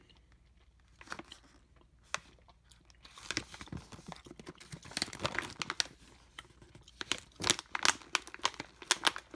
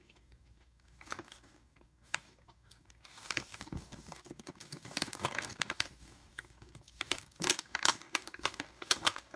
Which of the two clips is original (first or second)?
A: first